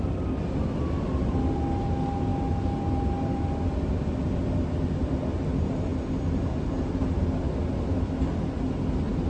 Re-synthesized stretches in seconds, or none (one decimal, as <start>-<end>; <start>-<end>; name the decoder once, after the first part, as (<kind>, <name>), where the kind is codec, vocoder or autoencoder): none